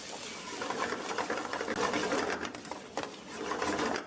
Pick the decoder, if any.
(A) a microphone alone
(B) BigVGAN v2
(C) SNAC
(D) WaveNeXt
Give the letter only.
A